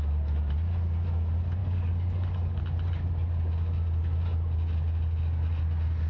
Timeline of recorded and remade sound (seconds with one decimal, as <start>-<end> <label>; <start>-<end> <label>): 0.0-1.6 recorded; 1.6-2.6 remade; 2.6-6.1 recorded